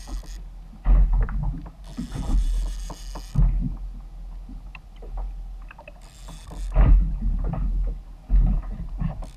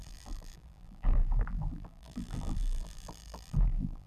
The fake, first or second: second